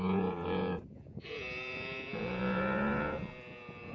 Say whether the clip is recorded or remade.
remade